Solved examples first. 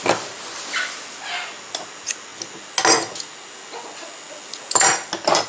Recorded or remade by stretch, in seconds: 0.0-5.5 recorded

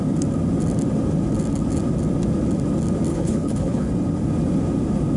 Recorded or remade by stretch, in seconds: 0.0-3.1 recorded; 3.1-3.9 remade; 3.9-5.2 recorded